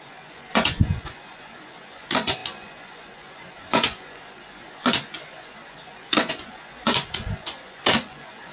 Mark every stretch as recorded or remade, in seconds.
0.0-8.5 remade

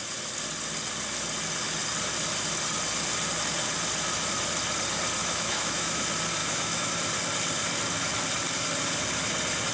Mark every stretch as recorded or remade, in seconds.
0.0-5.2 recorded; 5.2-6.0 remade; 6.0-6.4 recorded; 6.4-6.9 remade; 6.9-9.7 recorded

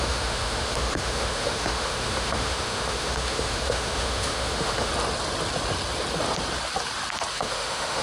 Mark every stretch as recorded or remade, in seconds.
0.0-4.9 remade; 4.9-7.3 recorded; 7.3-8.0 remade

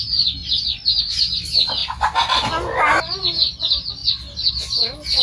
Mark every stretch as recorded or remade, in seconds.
0.0-5.2 recorded

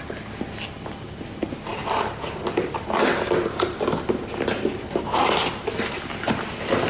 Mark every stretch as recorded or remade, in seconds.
0.0-6.9 recorded

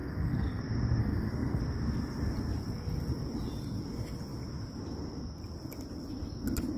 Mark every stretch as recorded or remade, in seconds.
0.0-0.6 remade; 0.6-1.0 recorded; 1.0-1.6 remade; 1.6-6.8 recorded

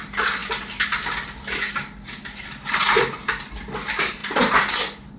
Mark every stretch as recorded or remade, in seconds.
0.0-5.2 recorded